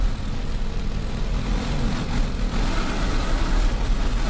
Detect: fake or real real